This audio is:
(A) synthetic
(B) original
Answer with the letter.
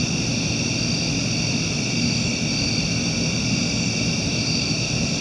B